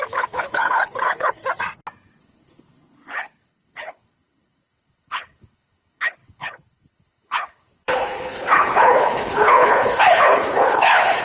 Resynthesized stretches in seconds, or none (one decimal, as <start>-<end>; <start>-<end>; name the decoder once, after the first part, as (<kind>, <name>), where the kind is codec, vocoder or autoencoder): 0.0-1.4 (codec, HILCodec); 2.2-11.2